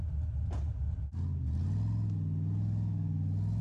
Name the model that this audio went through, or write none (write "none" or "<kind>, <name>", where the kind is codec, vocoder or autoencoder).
none